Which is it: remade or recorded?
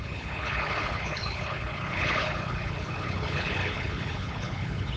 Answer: remade